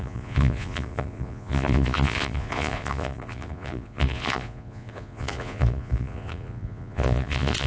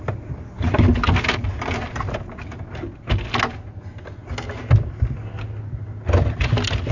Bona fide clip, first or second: second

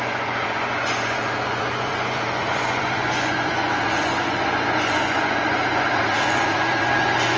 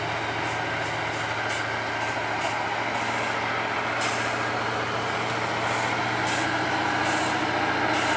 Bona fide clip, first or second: second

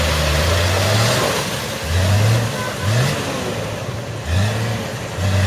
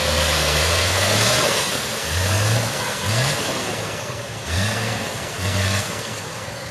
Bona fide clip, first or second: first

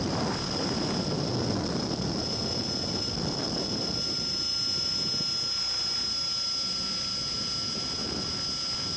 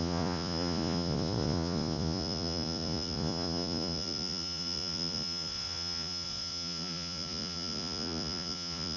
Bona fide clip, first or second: first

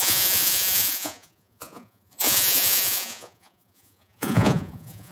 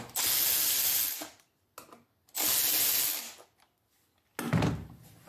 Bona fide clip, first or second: second